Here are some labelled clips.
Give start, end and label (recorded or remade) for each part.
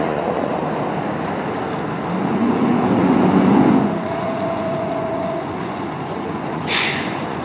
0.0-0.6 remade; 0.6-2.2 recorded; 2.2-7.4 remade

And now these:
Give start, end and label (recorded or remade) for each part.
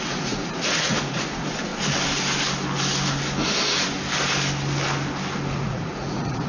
0.0-1.7 remade; 1.7-5.5 recorded; 5.5-6.5 remade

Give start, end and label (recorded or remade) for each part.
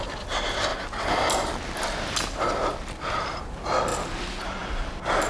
0.0-5.3 recorded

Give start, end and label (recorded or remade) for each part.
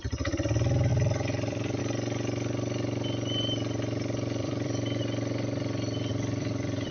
0.0-0.9 recorded; 0.9-1.8 remade; 1.8-4.4 recorded; 4.4-5.0 remade; 5.0-6.1 recorded; 6.1-6.9 remade